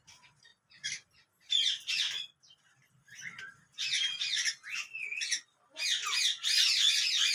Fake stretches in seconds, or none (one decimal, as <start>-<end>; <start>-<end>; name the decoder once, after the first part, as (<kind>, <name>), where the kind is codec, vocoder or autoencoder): 0.5-3.4 (vocoder, BigVGAN v2)